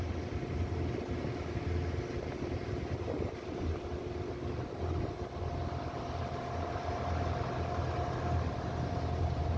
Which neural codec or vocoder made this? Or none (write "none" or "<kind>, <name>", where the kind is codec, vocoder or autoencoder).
none